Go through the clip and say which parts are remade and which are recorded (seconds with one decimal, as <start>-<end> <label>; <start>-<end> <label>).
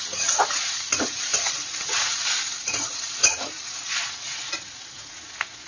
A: 0.0-5.7 remade